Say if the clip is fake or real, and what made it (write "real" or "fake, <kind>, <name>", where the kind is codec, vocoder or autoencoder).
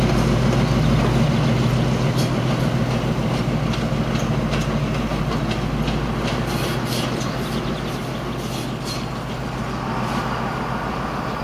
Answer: real